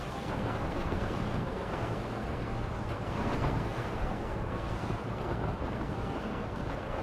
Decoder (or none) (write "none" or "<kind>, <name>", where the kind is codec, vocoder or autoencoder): codec, SNAC